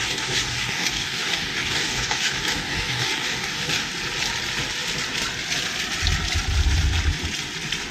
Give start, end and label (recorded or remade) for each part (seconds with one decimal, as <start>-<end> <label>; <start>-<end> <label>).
0.0-3.9 remade; 3.9-7.9 recorded